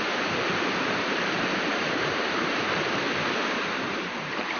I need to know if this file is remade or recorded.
remade